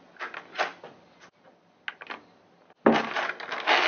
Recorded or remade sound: recorded